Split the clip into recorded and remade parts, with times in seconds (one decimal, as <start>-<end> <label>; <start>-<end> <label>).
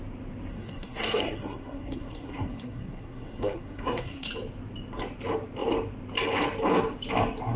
0.0-0.5 recorded; 0.5-4.3 remade; 4.3-7.6 recorded